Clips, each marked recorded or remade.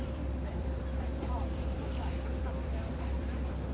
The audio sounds remade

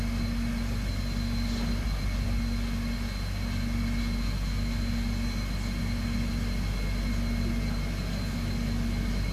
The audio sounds recorded